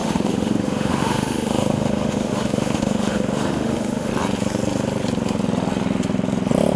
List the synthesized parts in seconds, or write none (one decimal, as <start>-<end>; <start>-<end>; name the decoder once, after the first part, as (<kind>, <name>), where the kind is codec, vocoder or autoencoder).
0.0-4.1 (autoencoder, DAC-VAE)